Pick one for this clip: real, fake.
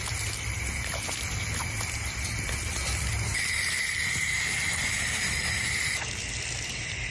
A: real